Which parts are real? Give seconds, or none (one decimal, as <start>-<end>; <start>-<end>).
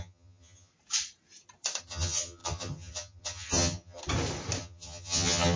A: 0.7-1.8; 4.0-4.6